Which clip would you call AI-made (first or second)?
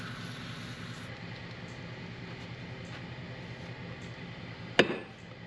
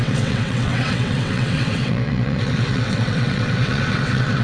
second